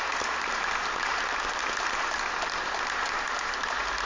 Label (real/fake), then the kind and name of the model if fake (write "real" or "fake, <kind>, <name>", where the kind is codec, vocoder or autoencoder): fake, vocoder, BigVGAN v2